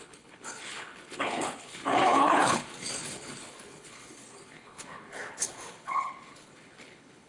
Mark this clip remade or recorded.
remade